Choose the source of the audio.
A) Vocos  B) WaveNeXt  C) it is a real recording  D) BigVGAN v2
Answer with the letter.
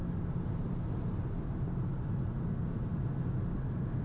C